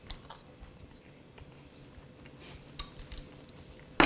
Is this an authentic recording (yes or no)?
yes